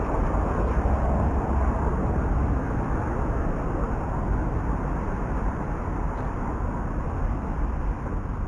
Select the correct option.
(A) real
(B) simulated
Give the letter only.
A